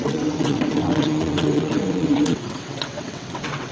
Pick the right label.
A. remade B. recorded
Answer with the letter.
A